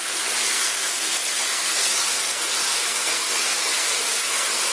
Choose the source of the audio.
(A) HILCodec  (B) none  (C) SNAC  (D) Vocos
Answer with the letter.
C